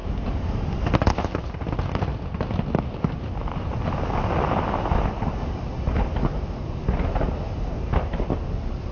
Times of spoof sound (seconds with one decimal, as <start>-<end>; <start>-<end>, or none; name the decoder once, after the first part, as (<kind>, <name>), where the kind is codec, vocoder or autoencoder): none